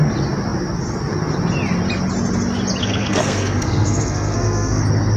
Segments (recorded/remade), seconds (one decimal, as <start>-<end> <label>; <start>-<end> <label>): 0.0-2.8 recorded; 2.8-4.8 remade; 4.8-5.2 recorded